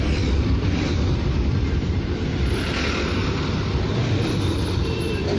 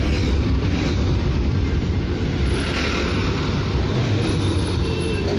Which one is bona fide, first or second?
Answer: second